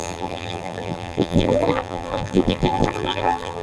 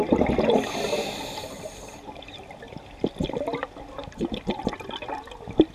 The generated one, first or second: first